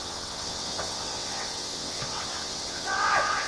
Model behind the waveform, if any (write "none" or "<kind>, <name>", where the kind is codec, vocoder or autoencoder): vocoder, WaveNeXt